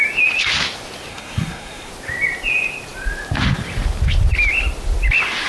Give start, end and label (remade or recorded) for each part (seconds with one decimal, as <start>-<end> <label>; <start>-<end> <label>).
0.0-1.1 recorded; 1.1-1.9 remade; 1.9-5.5 recorded